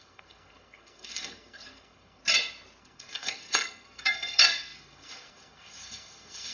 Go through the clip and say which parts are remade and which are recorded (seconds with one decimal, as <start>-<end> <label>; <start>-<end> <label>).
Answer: 0.0-2.2 remade; 2.2-2.8 recorded; 2.8-6.5 remade

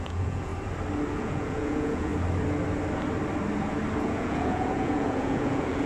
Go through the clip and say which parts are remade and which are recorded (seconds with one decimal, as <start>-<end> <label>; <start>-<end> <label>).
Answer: 0.0-0.5 remade; 0.5-1.2 recorded; 1.2-2.1 remade; 2.1-4.0 recorded; 4.0-5.9 remade

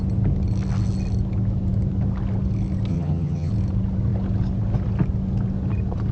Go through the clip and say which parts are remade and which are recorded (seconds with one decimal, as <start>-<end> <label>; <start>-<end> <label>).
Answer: 0.0-2.9 recorded; 2.9-3.5 remade; 3.5-6.1 recorded

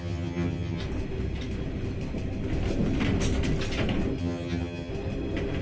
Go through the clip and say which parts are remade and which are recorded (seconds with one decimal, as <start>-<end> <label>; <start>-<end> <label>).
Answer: 0.0-0.8 remade; 0.8-4.2 recorded; 4.2-4.9 remade; 4.9-5.6 recorded

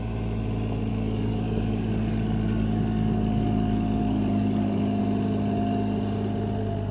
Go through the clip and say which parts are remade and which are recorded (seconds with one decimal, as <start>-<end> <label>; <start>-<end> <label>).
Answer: 0.0-0.9 recorded; 0.9-5.0 remade; 5.0-6.9 recorded

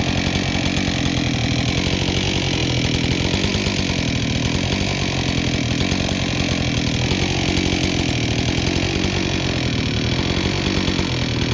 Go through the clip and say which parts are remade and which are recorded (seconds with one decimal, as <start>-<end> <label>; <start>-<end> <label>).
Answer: 0.0-11.5 recorded

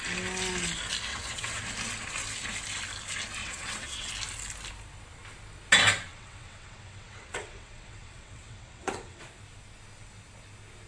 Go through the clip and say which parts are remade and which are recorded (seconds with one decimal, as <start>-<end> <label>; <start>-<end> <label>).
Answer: 0.0-1.1 recorded; 1.1-1.6 remade; 1.6-3.4 recorded; 3.4-4.1 remade; 4.1-6.1 recorded; 6.1-9.2 remade; 9.2-10.9 recorded